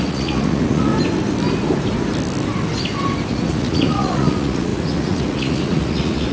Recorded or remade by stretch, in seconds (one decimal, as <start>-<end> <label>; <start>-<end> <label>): 0.0-0.9 remade; 0.9-3.3 recorded; 3.3-6.3 remade